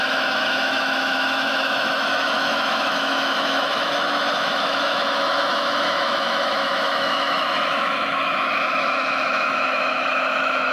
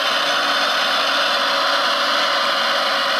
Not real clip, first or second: first